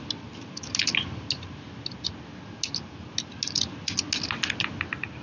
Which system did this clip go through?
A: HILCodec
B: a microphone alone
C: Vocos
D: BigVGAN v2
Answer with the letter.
B